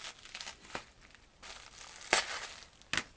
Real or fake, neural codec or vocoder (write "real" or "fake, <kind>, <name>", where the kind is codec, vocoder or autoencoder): real